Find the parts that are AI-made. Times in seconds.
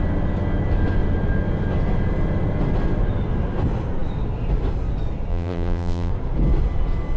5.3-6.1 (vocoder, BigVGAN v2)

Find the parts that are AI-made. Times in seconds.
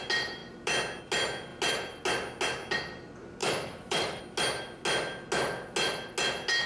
3.4-4.2 (autoencoder, DAC-VAE)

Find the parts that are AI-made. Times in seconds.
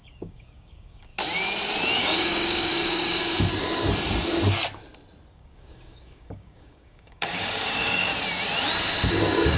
0.0-1.1 (codec, DAC); 2.0-3.2; 5.3-8.1; 9.1-9.6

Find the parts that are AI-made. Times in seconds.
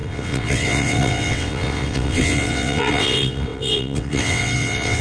0.0-5.0 (vocoder, WaveNeXt)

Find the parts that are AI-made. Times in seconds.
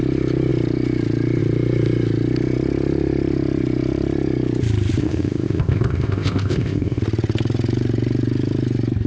5.0-7.0 (codec, ZipCodec)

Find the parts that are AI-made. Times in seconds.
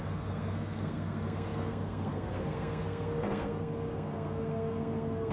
0.0-5.3 (codec, SNAC)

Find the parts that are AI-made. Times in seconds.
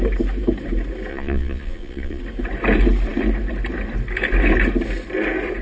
1.1-2.2 (vocoder, Vocos)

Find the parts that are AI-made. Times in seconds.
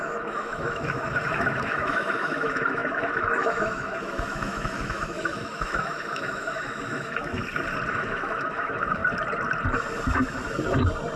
0.0-7.4 (autoencoder, DAC-VAE); 7.9-9.0